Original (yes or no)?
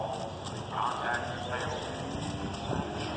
yes